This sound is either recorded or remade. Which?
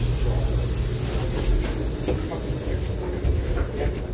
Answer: recorded